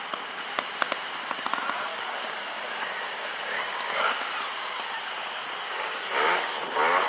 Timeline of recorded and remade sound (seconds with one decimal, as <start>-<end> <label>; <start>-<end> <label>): 0.0-1.9 recorded; 1.9-4.3 remade; 4.3-5.7 recorded; 5.7-6.6 remade; 6.6-7.1 recorded